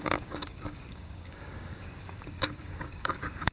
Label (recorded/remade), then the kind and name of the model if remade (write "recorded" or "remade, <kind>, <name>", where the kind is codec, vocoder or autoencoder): remade, codec, DAC